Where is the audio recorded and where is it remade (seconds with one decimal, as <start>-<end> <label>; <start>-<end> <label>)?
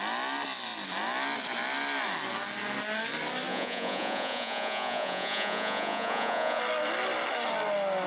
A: 0.0-3.5 recorded; 3.5-6.6 remade; 6.6-8.1 recorded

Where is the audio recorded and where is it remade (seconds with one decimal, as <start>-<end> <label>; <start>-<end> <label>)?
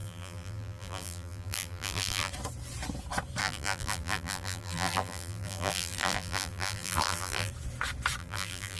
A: 0.0-2.3 remade; 2.3-3.4 recorded; 3.4-7.5 remade; 7.5-8.2 recorded; 8.2-8.8 remade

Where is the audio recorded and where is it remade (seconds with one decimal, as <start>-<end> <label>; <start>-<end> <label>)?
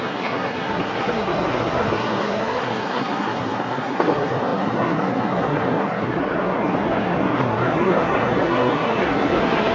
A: 0.0-9.7 remade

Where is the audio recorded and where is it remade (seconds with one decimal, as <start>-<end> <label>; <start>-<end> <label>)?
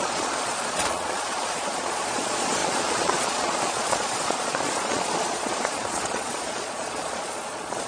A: 0.0-7.9 remade